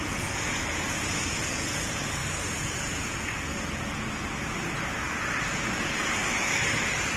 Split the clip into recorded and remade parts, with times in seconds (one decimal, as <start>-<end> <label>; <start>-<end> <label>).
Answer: 0.0-6.2 remade; 6.2-7.2 recorded